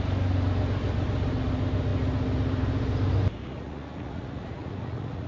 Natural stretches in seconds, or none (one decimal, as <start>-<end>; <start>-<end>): 0.0-3.4